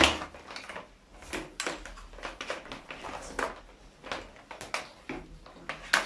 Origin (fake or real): real